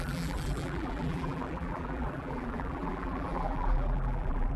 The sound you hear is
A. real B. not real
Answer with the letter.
B